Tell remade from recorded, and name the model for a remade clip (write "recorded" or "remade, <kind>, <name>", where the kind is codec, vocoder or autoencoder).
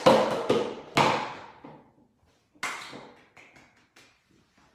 recorded